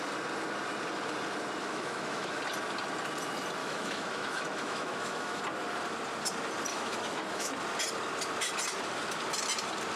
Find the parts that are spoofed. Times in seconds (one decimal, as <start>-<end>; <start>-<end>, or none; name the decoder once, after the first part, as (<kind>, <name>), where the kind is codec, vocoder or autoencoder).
1.6-2.4 (autoencoder, DAC-VAE); 3.6-5.4; 6.7-7.5